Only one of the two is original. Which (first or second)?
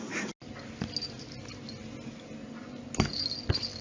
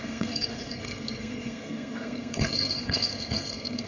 first